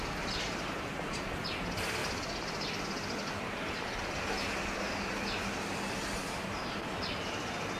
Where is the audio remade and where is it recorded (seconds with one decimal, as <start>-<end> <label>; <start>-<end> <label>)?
0.0-7.8 recorded